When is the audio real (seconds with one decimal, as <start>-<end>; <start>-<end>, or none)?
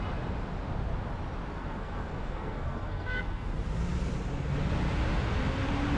0.0-1.5; 3.5-6.0